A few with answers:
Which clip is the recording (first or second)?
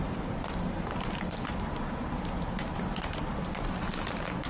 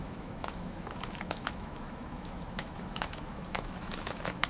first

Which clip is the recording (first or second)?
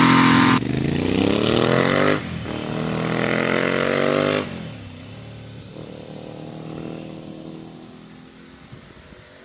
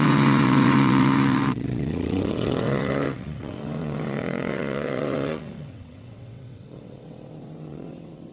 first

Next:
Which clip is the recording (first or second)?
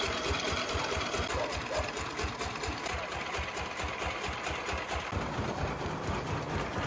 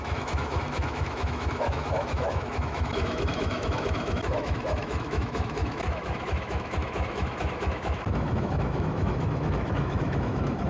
first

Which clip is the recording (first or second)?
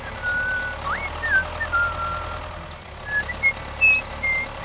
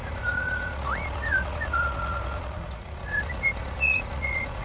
first